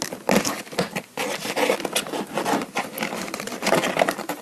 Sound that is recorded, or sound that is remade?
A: recorded